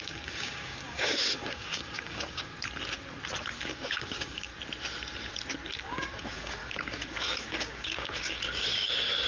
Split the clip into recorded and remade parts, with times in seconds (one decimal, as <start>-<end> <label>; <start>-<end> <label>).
0.0-2.5 remade; 2.5-3.6 recorded; 3.6-4.5 remade; 4.5-5.8 recorded; 5.8-9.3 remade